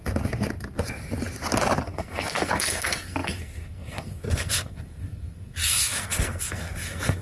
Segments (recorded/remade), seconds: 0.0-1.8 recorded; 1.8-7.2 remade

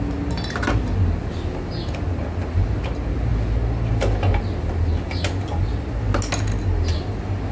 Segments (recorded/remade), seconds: 0.0-7.5 recorded

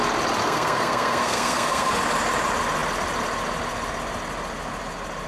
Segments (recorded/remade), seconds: 0.0-0.4 recorded; 0.4-1.9 remade; 1.9-5.3 recorded